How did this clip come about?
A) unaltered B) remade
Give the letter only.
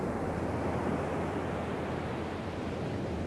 A